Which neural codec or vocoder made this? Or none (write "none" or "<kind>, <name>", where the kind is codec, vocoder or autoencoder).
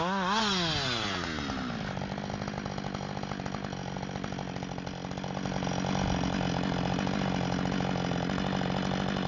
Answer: none